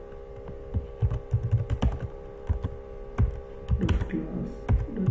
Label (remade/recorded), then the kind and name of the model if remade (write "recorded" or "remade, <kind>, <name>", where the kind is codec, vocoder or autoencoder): recorded